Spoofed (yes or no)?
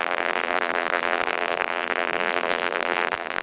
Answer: yes